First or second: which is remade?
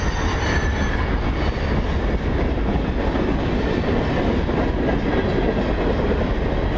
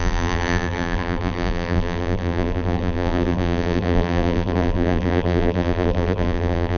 second